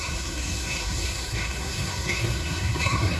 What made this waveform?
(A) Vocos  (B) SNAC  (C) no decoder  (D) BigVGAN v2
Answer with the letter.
B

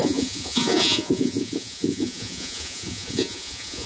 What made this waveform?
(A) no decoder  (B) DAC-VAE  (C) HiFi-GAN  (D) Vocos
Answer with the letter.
D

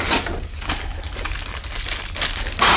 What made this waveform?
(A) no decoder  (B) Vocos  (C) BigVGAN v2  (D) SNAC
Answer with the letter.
A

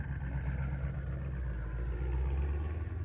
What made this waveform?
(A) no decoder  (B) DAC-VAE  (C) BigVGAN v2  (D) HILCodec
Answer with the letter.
A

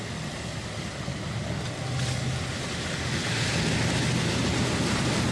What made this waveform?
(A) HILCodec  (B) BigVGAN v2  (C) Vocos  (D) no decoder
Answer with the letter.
D